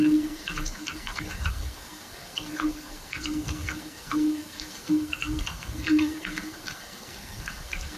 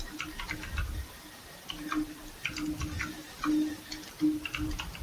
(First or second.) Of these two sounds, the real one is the second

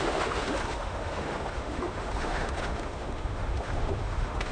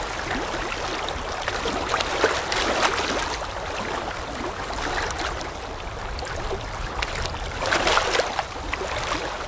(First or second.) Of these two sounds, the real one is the second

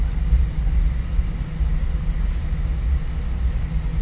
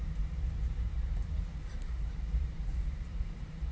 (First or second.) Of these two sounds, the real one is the first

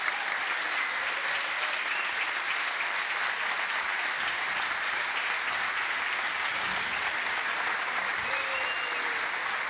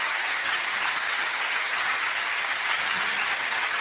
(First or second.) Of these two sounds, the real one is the first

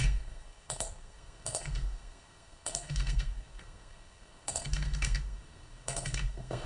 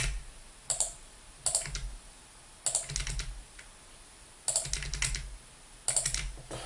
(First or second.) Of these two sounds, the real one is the second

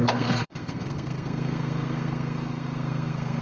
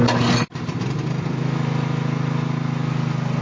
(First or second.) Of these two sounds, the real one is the second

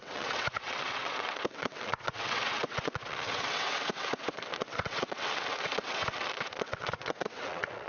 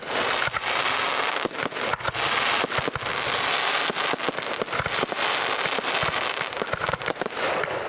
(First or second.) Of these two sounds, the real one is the second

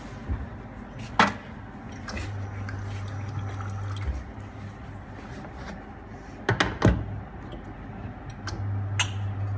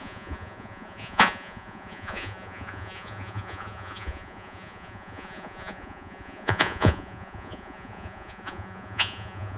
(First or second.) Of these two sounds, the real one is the first